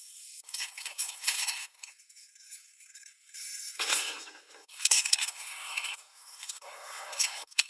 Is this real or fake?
fake